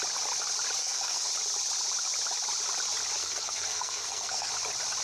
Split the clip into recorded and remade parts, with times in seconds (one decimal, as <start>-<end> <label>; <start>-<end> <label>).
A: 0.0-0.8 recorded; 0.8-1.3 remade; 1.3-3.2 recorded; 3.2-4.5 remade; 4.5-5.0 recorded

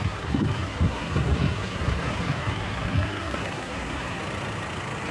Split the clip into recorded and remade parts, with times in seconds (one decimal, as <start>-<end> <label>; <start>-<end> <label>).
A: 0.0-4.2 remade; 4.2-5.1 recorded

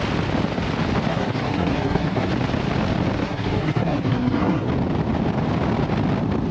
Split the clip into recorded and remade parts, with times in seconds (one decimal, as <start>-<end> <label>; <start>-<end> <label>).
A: 0.0-1.1 recorded; 1.1-2.3 remade; 2.3-3.2 recorded; 3.2-4.7 remade; 4.7-6.5 recorded

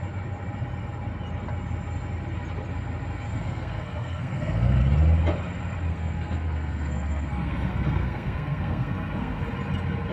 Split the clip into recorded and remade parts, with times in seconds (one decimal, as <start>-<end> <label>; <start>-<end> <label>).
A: 0.0-3.3 recorded; 3.3-4.8 remade; 4.8-5.9 recorded; 5.9-9.4 remade; 9.4-10.1 recorded

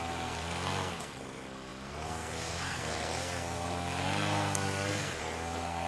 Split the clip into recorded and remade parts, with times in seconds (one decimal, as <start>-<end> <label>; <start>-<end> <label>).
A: 0.0-5.9 remade

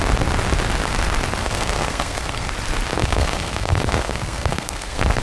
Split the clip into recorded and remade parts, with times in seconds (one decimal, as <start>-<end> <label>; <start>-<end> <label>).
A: 0.0-1.4 recorded; 1.4-2.5 remade; 2.5-3.0 recorded; 3.0-5.2 remade

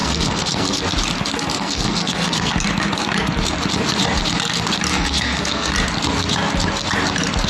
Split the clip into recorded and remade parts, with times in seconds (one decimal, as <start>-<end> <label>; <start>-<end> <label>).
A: 0.0-0.8 remade; 0.8-1.5 recorded; 1.5-2.5 remade; 2.5-4.9 recorded; 4.9-5.7 remade; 5.7-7.5 recorded

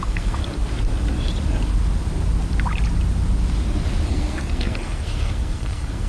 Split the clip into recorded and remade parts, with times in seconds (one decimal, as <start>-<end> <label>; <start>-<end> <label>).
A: 0.0-0.4 remade; 0.4-4.1 recorded; 4.1-6.1 remade